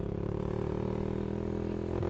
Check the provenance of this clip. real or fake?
real